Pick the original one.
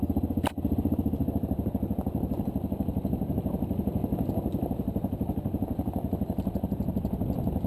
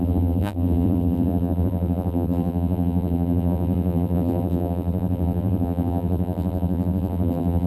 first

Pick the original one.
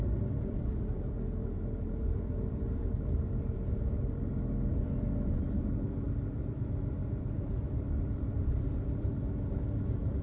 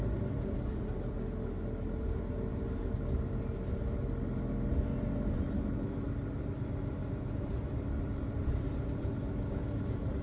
second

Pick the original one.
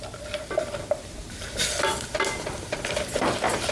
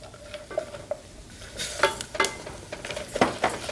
second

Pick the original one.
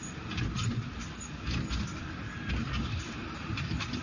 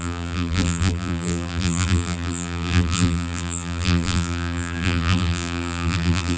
first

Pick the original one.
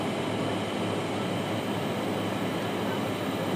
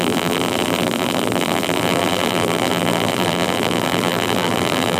first